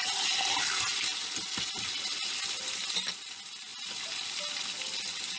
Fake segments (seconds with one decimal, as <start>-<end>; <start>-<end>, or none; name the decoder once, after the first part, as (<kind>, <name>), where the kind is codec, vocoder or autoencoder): none